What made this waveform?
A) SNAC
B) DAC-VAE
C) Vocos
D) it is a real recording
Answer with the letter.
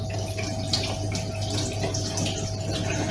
D